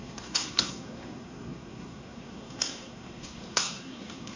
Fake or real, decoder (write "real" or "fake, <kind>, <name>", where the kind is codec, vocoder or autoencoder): fake, codec, SNAC